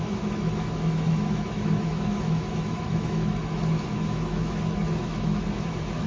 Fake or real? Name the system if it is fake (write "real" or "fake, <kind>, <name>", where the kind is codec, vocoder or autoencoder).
fake, autoencoder, DAC-VAE